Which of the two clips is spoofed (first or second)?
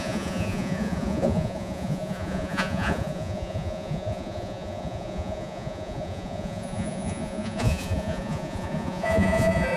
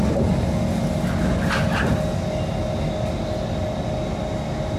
first